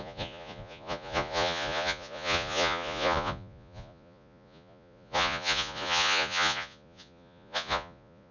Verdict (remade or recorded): remade